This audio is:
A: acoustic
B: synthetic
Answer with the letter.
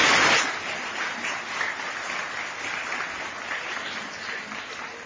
A